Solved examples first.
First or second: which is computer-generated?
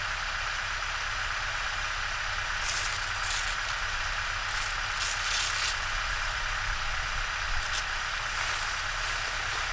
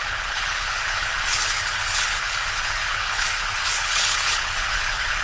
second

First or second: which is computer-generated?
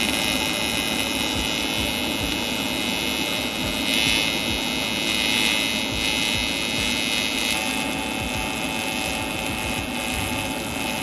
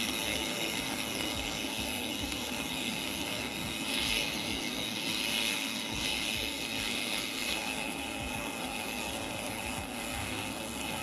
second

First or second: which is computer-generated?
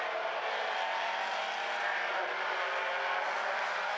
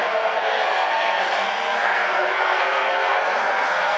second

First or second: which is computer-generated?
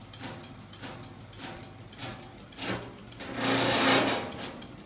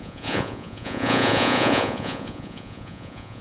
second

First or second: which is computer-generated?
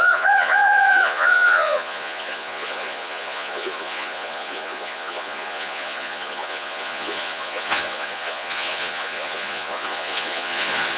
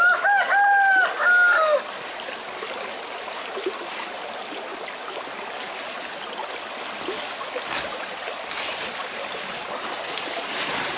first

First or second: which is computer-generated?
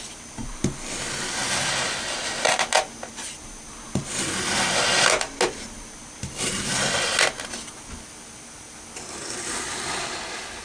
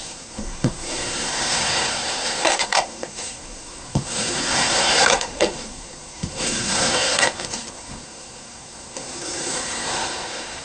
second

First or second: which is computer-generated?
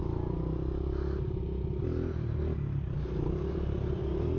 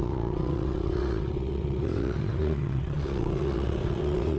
second